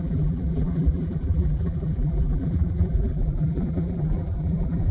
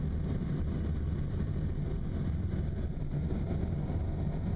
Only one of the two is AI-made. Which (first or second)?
first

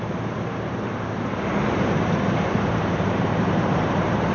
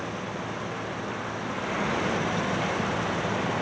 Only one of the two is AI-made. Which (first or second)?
first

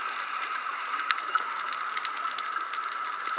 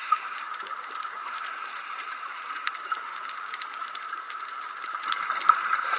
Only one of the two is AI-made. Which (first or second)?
second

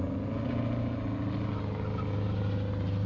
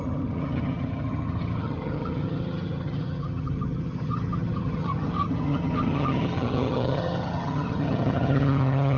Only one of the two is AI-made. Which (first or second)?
second